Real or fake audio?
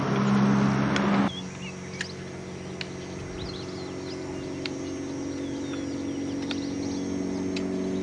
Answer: real